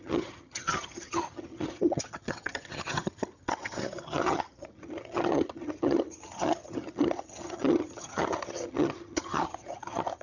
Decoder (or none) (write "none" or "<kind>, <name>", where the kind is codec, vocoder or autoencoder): vocoder, HiFi-GAN